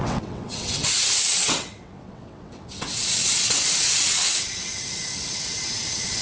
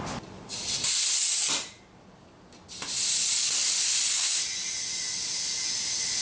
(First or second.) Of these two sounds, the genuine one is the second